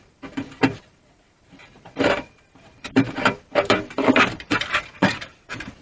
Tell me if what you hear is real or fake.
fake